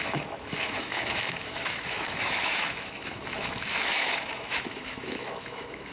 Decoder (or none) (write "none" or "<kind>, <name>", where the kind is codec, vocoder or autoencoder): autoencoder, DAC-VAE